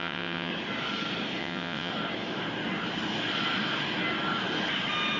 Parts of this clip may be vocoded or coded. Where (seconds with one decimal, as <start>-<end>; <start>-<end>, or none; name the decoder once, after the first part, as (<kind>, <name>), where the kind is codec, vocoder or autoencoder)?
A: 0.0-0.5 (vocoder, WaveNeXt); 1.4-1.9